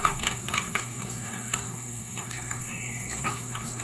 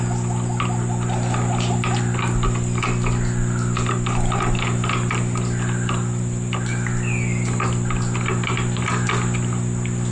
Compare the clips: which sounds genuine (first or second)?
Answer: second